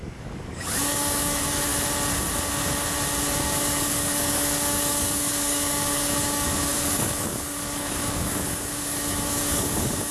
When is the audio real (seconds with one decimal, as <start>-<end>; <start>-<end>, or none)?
1.7-3.2

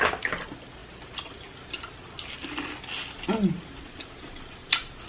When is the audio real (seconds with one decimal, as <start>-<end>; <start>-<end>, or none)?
0.0-5.1

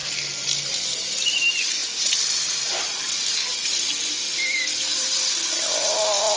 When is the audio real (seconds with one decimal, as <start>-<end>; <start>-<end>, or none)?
none

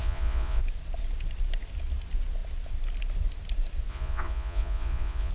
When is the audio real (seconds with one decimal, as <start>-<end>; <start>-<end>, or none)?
0.6-3.9

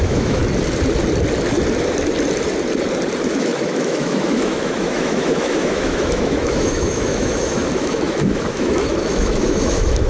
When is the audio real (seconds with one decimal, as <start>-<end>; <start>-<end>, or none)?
0.4-3.3

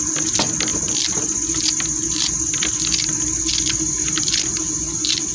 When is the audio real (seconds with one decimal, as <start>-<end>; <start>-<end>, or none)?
0.0-5.3